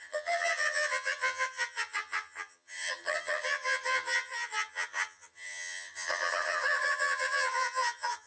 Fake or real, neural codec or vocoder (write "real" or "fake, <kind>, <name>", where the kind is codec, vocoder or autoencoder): fake, vocoder, HiFi-GAN